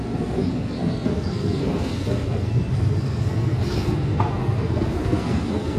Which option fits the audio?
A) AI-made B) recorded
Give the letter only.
A